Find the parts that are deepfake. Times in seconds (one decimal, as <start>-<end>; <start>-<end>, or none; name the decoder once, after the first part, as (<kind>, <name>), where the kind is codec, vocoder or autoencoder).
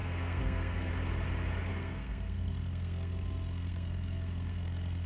0.0-0.9 (codec, SNAC); 1.7-5.1